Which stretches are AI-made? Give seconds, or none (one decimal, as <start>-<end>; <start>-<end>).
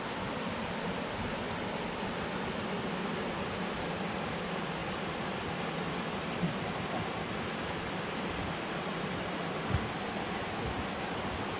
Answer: none